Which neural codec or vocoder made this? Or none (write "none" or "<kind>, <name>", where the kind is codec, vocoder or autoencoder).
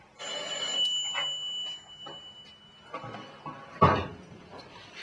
none